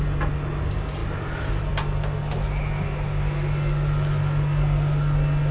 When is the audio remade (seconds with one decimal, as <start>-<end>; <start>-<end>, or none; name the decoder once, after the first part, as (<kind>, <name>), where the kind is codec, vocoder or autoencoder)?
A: 1.0-1.7 (vocoder, BigVGAN v2)